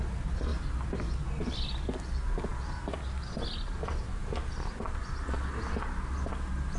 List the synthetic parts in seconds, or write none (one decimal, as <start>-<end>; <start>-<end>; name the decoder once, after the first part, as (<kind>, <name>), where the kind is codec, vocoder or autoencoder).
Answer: none

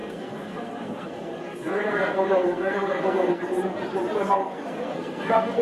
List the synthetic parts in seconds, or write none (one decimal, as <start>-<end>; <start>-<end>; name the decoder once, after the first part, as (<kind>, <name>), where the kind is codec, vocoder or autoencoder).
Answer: 0.0-3.4 (codec, SNAC); 4.4-5.6

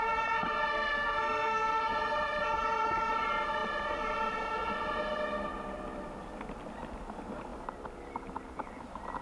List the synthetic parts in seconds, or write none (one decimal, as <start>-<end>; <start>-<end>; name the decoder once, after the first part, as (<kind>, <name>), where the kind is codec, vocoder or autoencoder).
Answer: 0.7-1.8 (codec, SNAC)